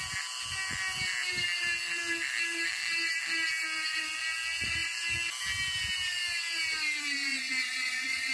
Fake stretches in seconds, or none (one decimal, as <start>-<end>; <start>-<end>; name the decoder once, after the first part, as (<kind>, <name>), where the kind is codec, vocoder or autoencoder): 7.3-8.3 (vocoder, Vocos)